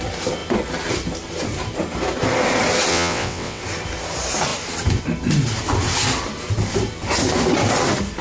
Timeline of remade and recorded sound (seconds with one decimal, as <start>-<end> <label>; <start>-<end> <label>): 0.0-2.9 recorded; 2.9-3.6 remade; 3.6-8.2 recorded